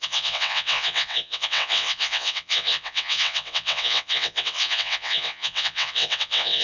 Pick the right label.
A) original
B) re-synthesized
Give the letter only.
B